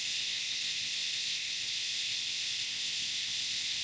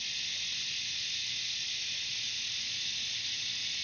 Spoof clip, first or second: first